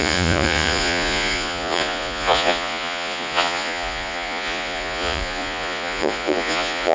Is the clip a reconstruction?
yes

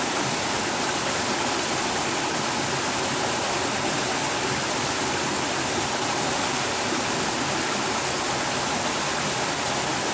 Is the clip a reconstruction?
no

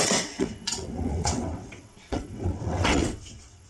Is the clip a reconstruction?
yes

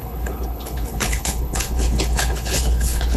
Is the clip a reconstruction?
yes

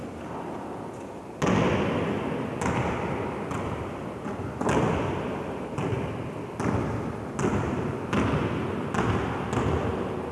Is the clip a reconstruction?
no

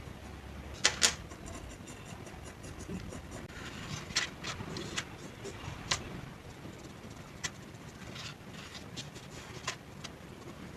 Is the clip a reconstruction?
no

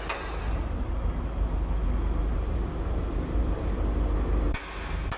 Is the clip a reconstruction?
no